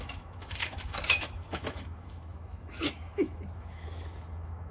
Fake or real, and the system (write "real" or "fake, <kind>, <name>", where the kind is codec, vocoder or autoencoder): fake, autoencoder, DAC-VAE